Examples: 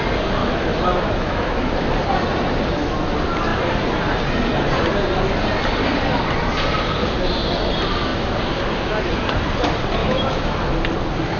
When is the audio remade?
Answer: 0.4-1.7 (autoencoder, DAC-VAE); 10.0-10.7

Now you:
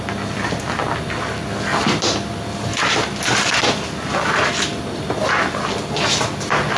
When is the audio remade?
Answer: none

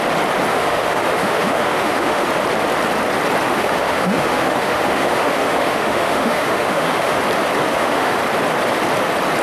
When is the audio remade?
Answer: 0.5-2.3 (autoencoder, DAC-VAE); 3.5-7.2; 7.7-8.2

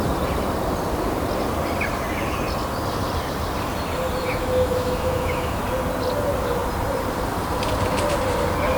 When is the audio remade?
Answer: 4.2-5.6 (autoencoder, DAC-VAE)

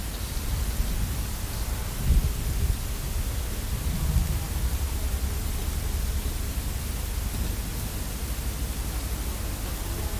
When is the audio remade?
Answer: none

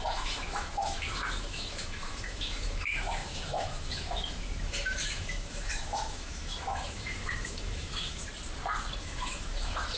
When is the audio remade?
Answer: 0.0-8.2 (autoencoder, DAC-VAE); 9.0-10.0

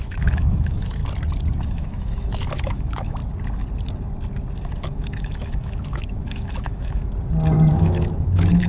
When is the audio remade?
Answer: 0.0-1.0 (autoencoder, DAC-VAE); 1.5-3.2; 4.8-7.1; 7.7-8.7

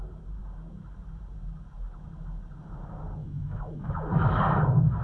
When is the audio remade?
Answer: 3.2-3.9 (autoencoder, DAC-VAE)